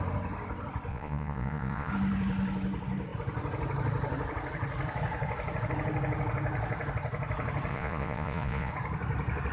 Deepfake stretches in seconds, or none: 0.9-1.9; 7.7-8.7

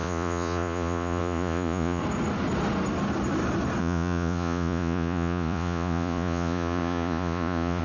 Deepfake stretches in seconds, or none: 0.0-2.0; 3.8-7.8

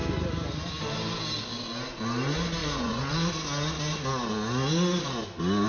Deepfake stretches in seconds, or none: 2.6-3.3

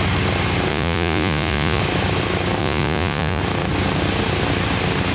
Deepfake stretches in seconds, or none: 0.7-1.8; 2.6-3.4

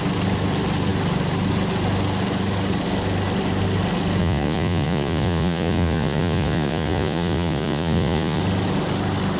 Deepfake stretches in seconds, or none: 4.2-8.4

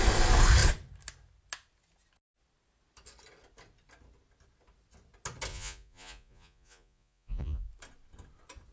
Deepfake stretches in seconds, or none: 5.5-7.7